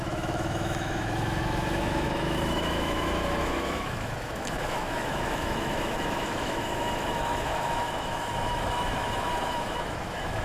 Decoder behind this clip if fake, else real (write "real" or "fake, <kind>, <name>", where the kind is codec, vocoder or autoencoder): fake, autoencoder, DAC-VAE